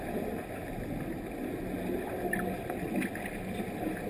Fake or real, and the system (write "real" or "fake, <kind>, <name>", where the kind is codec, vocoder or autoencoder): real